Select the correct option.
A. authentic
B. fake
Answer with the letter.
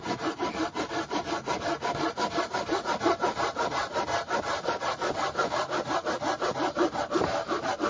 B